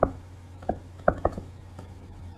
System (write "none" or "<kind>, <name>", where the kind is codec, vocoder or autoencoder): autoencoder, DAC-VAE